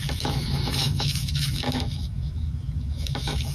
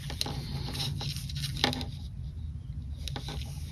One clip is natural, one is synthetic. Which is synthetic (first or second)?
first